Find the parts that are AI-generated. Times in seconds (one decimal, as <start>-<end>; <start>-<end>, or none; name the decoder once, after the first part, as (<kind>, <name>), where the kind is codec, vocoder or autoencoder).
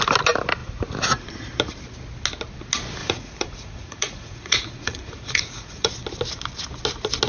3.0-5.9 (vocoder, Vocos)